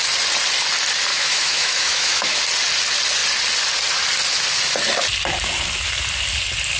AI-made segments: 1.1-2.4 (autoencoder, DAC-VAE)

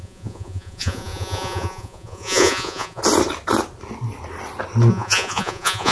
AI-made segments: 0.0-3.0 (vocoder, Vocos); 4.9-5.9

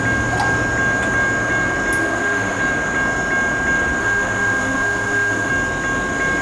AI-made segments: 2.0-2.6 (autoencoder, DAC-VAE); 4.0-5.5

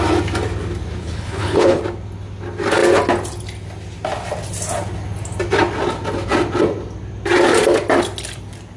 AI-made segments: 1.0-1.8 (codec, HILCodec)

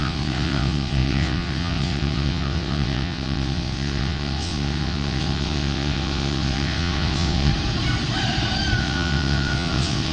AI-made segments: 0.0-7.5 (vocoder, WaveNeXt); 8.8-10.1

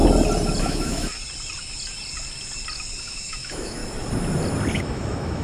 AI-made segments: 0.6-1.1 (autoencoder, DAC-VAE); 3.0-3.8; 4.7-5.4

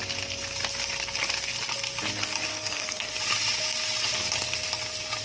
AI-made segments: 2.5-3.1 (codec, SNAC)